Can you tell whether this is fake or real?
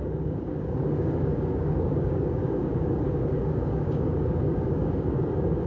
fake